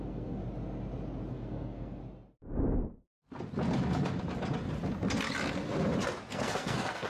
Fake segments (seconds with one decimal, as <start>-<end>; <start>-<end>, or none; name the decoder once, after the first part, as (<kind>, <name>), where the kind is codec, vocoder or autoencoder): 0.0-0.4 (codec, SNAC); 1.3-2.0; 6.3-7.1